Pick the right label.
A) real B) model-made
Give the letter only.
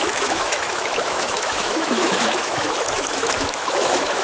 B